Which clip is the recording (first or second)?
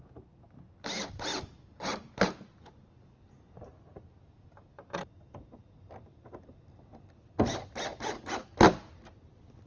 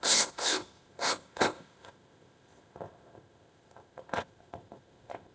first